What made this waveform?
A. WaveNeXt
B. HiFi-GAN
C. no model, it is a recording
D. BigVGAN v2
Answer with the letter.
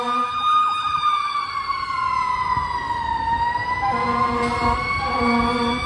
C